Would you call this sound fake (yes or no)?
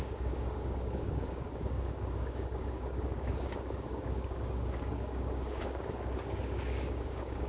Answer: yes